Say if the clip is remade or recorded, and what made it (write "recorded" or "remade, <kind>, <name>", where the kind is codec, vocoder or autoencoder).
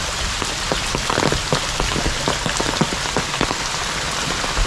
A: recorded